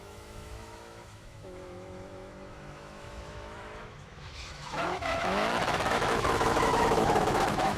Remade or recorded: remade